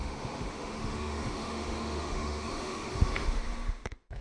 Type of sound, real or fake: fake